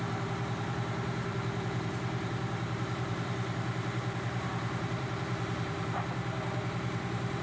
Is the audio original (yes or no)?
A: no